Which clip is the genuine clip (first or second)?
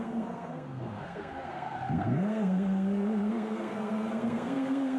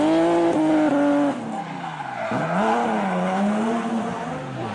second